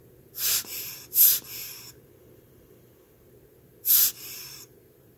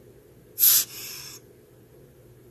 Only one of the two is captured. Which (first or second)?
second